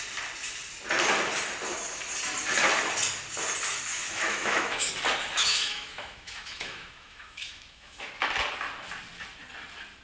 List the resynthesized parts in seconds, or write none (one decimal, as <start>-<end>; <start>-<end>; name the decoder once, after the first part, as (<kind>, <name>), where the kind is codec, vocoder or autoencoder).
3.9-4.9 (autoencoder, DAC-VAE); 5.4-8.1